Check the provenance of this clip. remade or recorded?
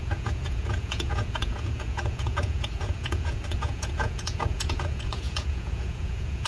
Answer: remade